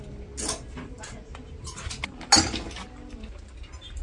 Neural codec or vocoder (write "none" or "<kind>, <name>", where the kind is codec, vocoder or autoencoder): none